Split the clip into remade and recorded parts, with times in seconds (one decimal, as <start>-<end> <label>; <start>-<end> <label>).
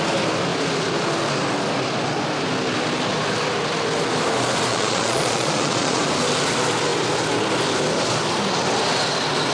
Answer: 0.0-4.7 recorded; 4.7-6.0 remade; 6.0-9.5 recorded